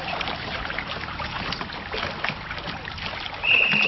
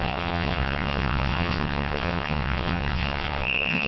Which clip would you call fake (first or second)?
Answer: second